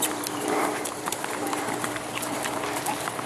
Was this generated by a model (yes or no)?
yes